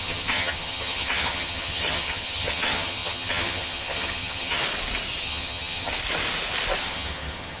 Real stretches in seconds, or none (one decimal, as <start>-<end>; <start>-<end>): 4.6-5.2; 5.9-6.8